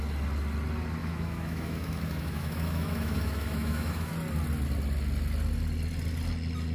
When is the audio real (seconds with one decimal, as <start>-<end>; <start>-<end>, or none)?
0.0-1.0; 4.1-6.7